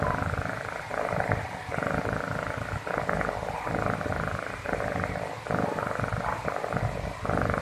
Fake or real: real